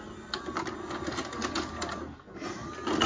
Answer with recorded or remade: recorded